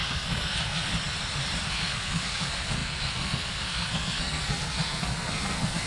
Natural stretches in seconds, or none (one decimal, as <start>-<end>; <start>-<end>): 0.9-1.7